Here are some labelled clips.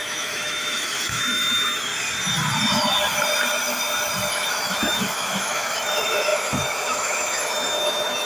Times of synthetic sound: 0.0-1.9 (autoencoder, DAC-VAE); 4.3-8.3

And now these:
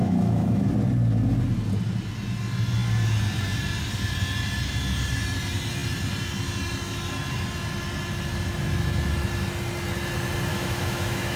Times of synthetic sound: 0.0-0.7 (autoencoder, DAC-VAE); 10.5-11.4

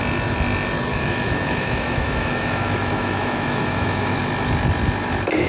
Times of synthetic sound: 0.9-4.2 (autoencoder, DAC-VAE)

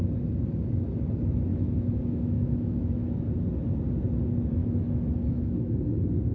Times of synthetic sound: 1.5-3.2 (autoencoder, DAC-VAE); 4.6-5.8

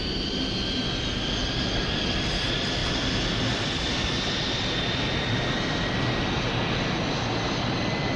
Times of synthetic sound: none